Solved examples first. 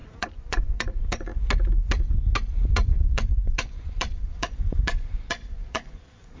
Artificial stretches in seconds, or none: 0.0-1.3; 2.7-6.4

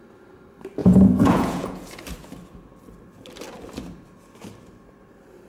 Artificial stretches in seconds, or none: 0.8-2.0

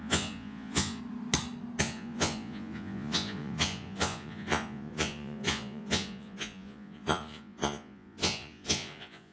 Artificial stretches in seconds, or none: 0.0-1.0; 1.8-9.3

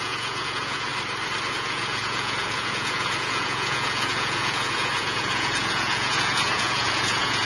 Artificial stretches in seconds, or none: 0.0-0.9; 1.5-7.4

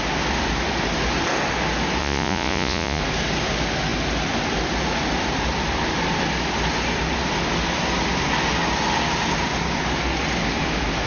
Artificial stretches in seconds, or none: 2.0-3.0

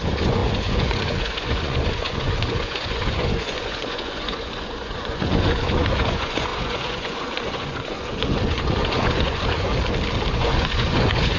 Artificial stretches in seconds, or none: 0.0-9.7; 10.3-11.4

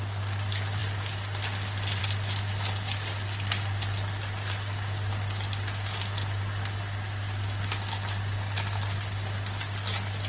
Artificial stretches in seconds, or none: none

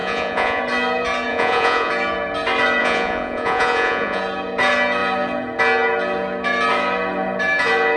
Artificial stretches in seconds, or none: 0.0-0.6; 1.3-1.9; 2.8-4.2